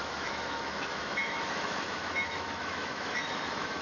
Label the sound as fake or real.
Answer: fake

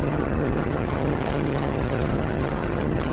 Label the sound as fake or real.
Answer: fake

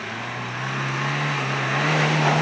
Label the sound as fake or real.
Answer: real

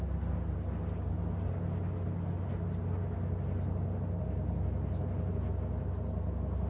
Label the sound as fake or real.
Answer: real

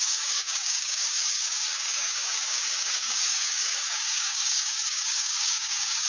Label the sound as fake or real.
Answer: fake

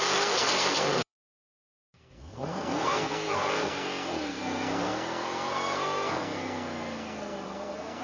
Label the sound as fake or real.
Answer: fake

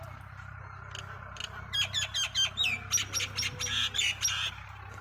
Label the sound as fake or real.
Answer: real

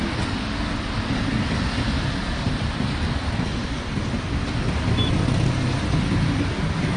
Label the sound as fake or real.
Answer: real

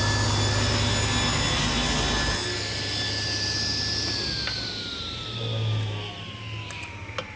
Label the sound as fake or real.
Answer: real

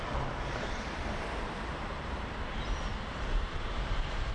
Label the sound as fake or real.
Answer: fake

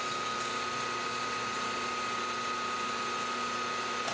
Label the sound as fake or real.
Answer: real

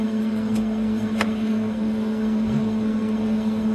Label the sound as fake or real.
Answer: fake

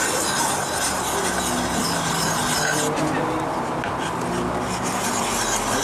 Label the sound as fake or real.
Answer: real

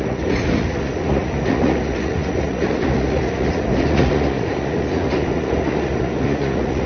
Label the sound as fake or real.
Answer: fake